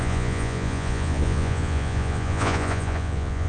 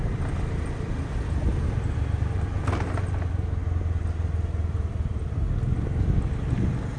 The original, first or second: second